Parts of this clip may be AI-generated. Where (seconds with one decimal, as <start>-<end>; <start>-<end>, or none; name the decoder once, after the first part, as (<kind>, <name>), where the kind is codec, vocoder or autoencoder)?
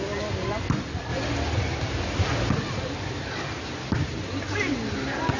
none